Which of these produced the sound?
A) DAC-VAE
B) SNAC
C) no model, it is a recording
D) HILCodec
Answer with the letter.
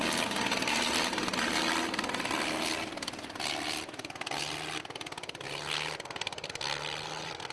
C